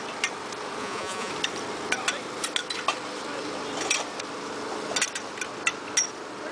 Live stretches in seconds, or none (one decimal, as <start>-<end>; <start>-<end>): 0.0-0.8; 1.3-6.5